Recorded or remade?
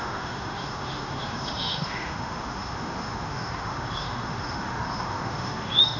remade